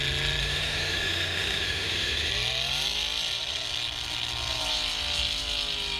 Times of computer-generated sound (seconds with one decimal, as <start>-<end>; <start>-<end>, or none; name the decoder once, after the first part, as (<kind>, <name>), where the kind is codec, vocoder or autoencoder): 0.4-2.3 (autoencoder, DAC-VAE)